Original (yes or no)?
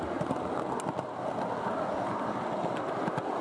yes